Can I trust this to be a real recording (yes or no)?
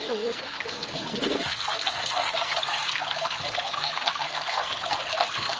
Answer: no